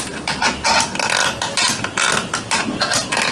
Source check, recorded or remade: recorded